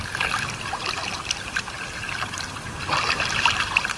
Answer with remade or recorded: recorded